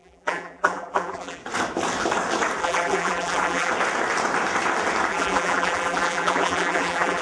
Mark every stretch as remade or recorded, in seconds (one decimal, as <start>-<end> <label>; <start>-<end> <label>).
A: 0.0-1.4 remade; 1.4-2.6 recorded; 2.6-3.7 remade; 3.7-5.1 recorded; 5.1-7.2 remade